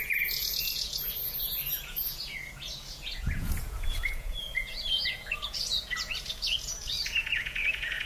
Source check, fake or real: fake